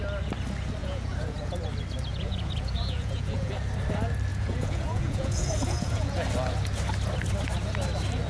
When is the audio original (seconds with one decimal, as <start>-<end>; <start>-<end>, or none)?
0.0-0.8; 1.6-2.1; 3.5-4.3; 6.2-8.3

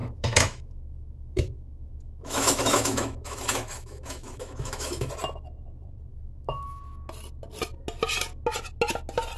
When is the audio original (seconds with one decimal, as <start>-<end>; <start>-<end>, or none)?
5.1-6.1; 6.8-9.4

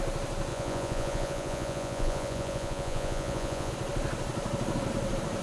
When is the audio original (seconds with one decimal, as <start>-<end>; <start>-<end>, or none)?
0.0-0.5; 3.7-5.4

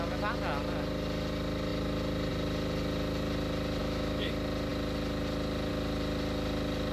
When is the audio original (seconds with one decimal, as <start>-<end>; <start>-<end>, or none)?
0.0-3.8; 4.3-6.9

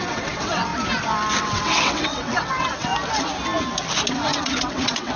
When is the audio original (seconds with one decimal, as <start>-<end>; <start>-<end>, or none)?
0.7-1.4; 2.9-4.1

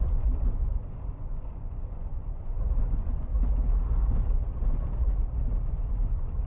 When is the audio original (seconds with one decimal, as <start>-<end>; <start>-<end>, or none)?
3.3-5.7

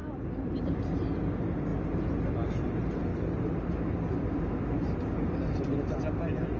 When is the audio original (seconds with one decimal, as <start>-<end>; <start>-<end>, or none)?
0.0-6.6

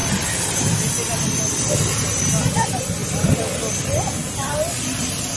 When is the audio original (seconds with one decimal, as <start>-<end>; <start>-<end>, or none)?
0.0-5.4